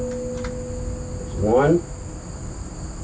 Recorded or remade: recorded